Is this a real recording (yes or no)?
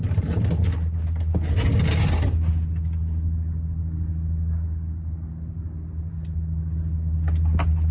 yes